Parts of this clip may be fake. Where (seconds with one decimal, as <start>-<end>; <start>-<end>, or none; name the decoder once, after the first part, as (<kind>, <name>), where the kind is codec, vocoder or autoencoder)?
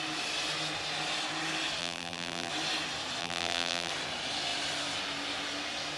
1.8-2.5 (vocoder, BigVGAN v2); 3.2-3.9